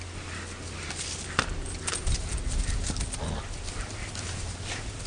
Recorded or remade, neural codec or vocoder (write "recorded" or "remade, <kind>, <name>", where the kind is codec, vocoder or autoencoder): recorded